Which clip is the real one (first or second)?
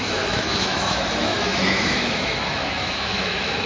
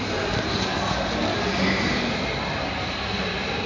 second